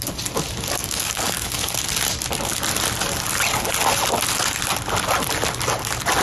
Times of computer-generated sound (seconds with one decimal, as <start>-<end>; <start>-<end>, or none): 0.8-1.7